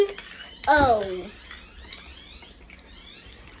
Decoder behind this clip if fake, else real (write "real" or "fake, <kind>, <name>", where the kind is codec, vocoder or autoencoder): real